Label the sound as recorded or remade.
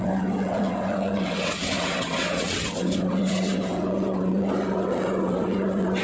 remade